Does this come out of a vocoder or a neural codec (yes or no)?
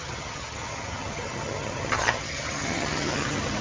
yes